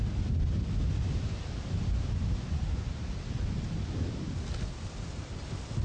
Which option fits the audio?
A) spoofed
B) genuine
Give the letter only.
B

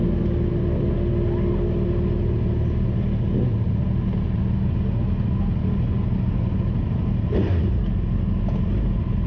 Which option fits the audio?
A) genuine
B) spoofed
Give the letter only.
A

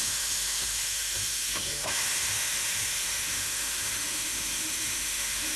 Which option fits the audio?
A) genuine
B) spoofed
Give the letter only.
B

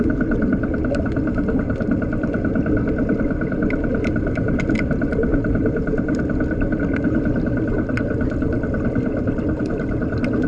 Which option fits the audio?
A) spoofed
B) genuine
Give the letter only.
B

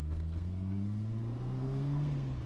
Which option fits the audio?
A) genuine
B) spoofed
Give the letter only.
B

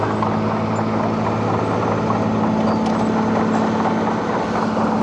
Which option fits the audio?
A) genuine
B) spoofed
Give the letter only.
A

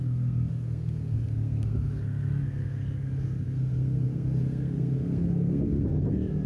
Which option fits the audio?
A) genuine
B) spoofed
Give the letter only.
B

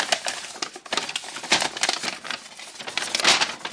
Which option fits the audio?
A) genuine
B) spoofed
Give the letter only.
A